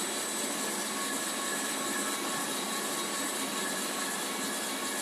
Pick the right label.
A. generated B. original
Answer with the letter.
B